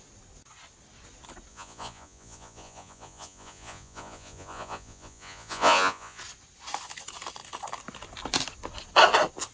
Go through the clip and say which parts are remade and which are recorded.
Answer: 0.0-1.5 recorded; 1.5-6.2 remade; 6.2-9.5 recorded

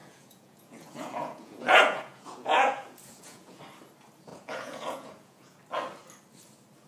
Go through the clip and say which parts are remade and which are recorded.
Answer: 0.0-3.6 remade; 3.6-4.3 recorded; 4.3-5.6 remade; 5.6-6.9 recorded

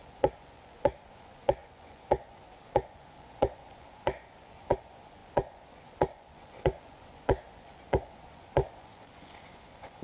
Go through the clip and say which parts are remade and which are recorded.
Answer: 0.0-10.0 remade